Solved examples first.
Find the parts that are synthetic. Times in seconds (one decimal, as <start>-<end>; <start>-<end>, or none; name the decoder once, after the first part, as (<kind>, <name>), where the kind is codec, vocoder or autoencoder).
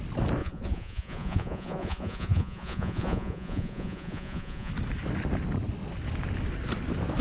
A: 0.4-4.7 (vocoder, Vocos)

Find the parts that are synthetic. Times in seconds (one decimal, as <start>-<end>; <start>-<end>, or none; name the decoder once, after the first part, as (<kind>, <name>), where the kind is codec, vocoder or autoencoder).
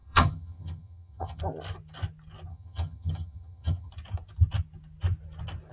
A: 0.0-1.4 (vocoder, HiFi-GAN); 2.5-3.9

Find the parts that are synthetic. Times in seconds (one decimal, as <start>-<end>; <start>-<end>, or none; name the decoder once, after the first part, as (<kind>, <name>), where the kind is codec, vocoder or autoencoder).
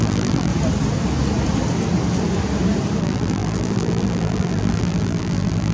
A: 0.0-0.5 (vocoder, BigVGAN v2); 3.0-5.7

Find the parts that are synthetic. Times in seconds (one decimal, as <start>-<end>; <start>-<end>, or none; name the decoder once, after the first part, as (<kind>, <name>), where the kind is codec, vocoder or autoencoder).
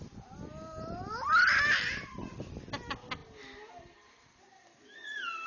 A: none